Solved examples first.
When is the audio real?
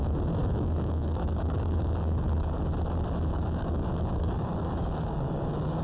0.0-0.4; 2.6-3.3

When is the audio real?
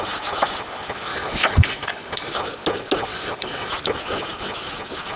0.0-1.1; 2.3-3.1; 3.7-5.2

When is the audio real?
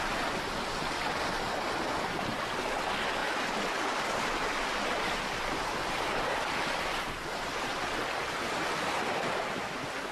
0.0-10.1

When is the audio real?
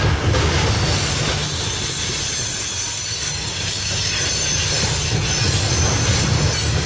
0.0-3.5; 4.1-6.9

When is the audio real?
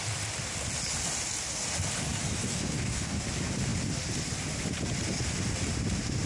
0.0-2.5; 3.2-6.3